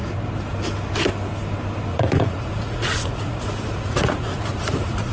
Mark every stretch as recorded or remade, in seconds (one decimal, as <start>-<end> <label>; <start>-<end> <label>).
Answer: 0.0-1.9 recorded; 1.9-5.1 remade